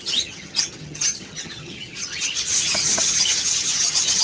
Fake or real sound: fake